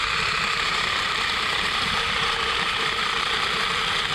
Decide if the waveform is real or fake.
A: fake